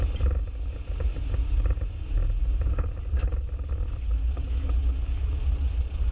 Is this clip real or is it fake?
real